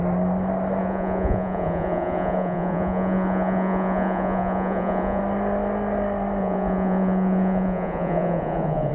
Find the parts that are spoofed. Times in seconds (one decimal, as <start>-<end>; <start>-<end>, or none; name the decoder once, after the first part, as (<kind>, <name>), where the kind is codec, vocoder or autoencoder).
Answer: 0.8-5.2 (vocoder, Vocos); 6.4-8.9